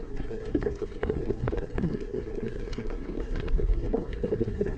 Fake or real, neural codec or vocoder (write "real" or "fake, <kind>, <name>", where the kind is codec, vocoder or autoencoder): fake, codec, SNAC